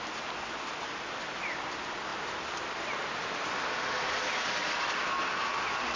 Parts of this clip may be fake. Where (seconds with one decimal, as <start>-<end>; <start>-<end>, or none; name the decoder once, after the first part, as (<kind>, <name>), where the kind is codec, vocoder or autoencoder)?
none